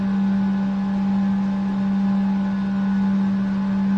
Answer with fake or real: real